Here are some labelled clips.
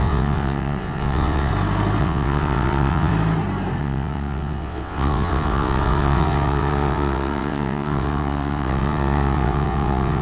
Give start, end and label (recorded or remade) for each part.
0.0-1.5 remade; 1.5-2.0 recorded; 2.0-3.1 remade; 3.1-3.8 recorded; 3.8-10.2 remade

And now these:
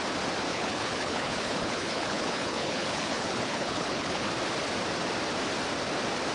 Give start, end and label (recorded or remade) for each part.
0.0-0.5 recorded; 0.5-4.3 remade; 4.3-6.3 recorded

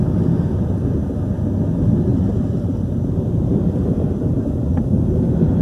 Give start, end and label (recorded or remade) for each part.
0.0-2.1 recorded; 2.1-4.7 remade; 4.7-5.6 recorded

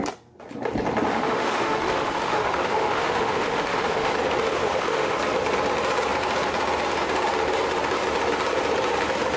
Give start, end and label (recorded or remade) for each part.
0.0-1.1 recorded; 1.1-4.1 remade; 4.1-4.5 recorded; 4.5-5.2 remade; 5.2-9.4 recorded

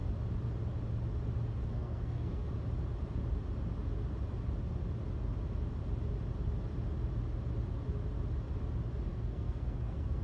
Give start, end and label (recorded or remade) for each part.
0.0-1.7 recorded; 1.7-2.5 remade; 2.5-9.1 recorded; 9.1-10.2 remade

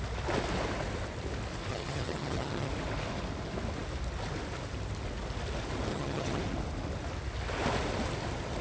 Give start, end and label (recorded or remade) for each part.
0.0-1.7 recorded; 1.7-2.7 remade; 2.7-5.9 recorded; 5.9-6.4 remade; 6.4-8.6 recorded